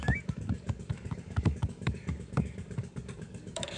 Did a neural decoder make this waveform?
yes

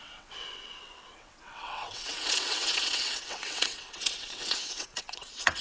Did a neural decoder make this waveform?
yes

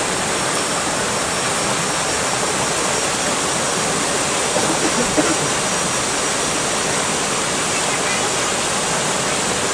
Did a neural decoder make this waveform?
no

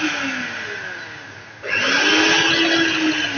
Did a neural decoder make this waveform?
no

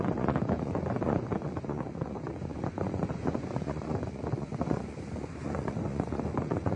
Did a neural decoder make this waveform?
yes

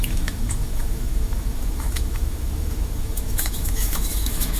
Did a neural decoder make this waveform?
yes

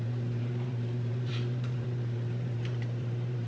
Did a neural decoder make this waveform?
yes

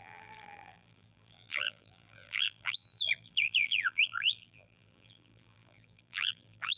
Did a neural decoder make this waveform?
yes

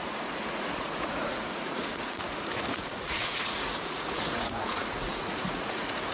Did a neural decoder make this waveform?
yes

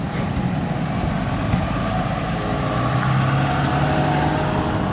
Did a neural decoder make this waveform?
no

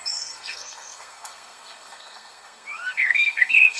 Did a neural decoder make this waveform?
yes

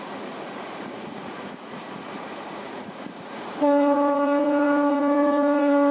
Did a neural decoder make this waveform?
yes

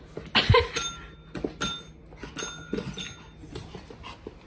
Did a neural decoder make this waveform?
no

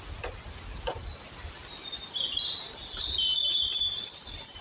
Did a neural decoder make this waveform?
no